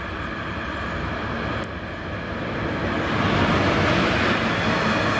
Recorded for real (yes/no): yes